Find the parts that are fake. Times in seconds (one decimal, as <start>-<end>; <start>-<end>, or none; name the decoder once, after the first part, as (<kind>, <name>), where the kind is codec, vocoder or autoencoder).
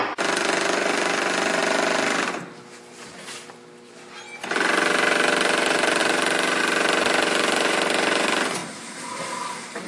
none